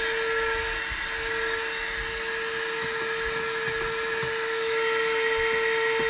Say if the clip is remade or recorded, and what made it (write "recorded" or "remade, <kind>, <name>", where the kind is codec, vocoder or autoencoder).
recorded